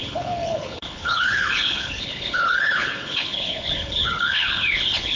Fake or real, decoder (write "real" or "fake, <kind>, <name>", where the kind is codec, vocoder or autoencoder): fake, codec, HILCodec